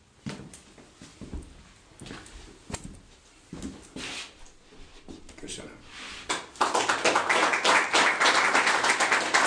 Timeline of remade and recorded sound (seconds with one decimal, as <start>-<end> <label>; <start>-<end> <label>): 0.0-9.5 recorded